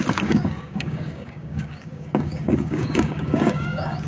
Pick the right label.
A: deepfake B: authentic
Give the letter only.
A